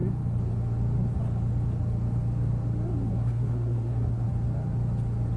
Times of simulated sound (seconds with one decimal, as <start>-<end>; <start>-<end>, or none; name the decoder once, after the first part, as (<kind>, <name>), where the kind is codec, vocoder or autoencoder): 3.1-4.3 (codec, SNAC)